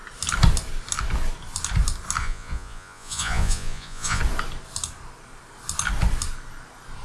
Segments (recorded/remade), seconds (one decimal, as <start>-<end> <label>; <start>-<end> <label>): 0.0-2.2 recorded; 2.2-4.2 remade; 4.2-7.0 recorded